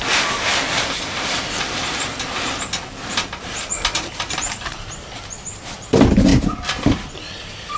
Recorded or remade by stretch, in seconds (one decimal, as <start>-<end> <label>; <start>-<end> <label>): 0.0-0.5 recorded; 0.5-5.2 remade; 5.2-7.8 recorded